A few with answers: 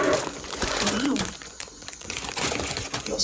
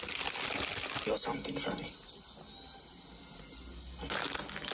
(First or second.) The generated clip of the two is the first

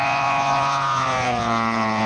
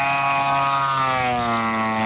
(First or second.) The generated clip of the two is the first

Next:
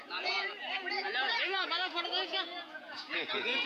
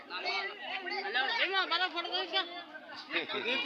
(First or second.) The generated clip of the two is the first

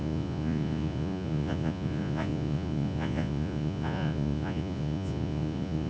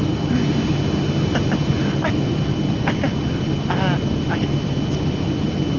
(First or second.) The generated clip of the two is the first